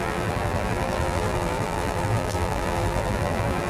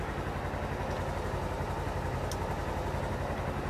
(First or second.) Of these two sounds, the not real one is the first